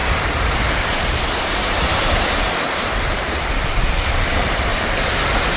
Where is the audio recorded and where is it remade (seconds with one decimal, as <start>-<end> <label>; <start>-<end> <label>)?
0.0-4.7 remade; 4.7-5.6 recorded